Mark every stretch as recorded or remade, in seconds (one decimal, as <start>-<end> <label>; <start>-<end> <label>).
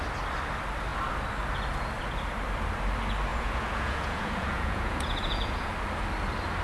0.0-3.3 recorded; 3.3-5.7 remade; 5.7-6.6 recorded